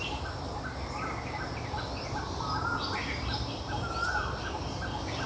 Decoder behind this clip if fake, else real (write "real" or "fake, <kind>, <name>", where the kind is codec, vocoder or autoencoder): real